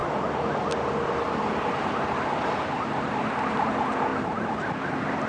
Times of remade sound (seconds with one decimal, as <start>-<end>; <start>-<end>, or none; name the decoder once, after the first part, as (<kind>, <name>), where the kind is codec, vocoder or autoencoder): none